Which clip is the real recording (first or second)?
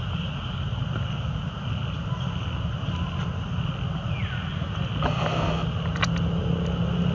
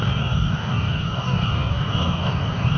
first